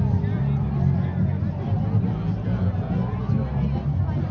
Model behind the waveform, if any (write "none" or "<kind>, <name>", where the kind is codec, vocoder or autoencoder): none